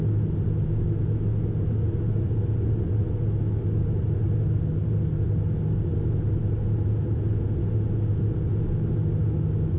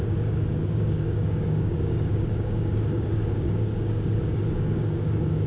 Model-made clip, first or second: second